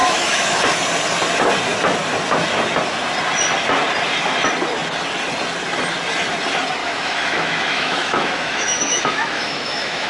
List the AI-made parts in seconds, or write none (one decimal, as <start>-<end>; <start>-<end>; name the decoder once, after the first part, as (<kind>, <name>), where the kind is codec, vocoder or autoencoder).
0.0-0.6 (autoencoder, DAC-VAE); 6.8-10.1

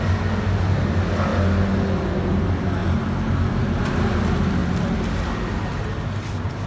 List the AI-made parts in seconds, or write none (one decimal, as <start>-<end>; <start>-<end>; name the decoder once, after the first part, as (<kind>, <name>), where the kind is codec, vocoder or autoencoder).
none

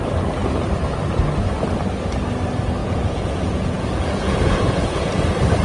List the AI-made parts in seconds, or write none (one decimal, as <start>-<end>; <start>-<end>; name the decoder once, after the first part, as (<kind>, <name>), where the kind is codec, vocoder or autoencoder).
2.8-5.1 (vocoder, Vocos)

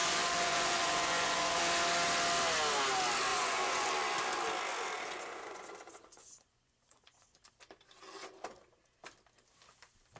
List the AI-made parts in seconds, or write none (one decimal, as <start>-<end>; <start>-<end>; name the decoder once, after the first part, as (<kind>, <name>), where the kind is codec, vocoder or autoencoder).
0.0-1.6 (vocoder, Vocos); 3.3-3.9; 4.7-7.4

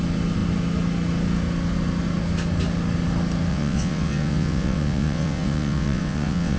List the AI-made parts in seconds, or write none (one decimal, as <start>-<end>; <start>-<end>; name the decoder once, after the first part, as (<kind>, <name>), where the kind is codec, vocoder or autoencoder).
3.5-6.6 (vocoder, WaveNeXt)